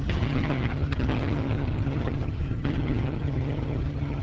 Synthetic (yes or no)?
yes